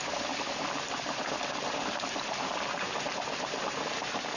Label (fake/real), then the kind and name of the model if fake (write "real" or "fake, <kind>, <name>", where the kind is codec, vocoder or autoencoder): fake, vocoder, BigVGAN v2